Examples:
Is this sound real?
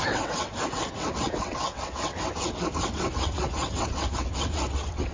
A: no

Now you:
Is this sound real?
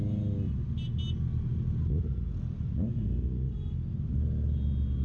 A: yes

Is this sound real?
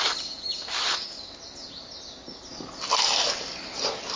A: yes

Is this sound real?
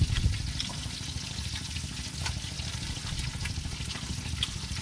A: yes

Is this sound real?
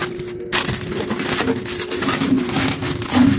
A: yes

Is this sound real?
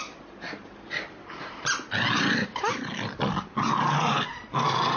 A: yes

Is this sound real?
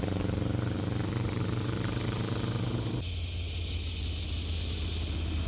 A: yes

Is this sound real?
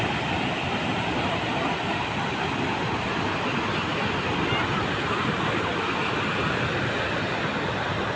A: yes